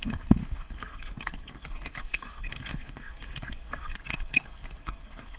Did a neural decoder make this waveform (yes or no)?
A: yes